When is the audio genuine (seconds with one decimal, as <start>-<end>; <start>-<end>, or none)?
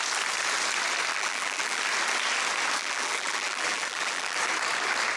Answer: 0.0-1.1; 1.8-2.8; 4.4-5.2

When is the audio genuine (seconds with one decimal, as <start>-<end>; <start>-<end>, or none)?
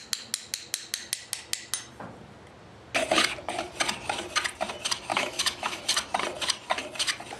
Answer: 0.0-5.1; 5.8-7.4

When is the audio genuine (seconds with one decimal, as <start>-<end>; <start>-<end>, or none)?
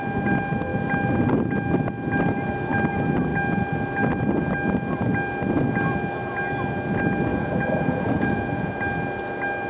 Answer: 0.0-7.3; 8.7-9.7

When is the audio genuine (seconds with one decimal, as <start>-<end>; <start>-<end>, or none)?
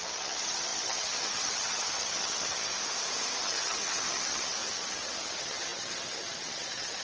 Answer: 2.7-3.4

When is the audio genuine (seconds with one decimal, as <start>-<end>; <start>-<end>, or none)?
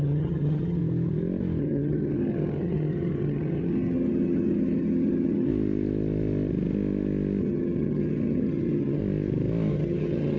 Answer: 0.8-1.6; 5.5-7.4; 9.0-9.7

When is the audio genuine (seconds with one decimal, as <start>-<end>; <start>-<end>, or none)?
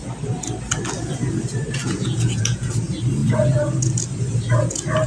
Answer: 0.0-1.8; 2.7-5.1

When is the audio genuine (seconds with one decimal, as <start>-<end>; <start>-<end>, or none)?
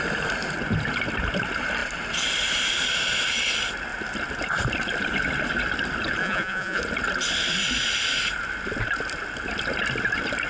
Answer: 0.0-6.2; 6.8-10.5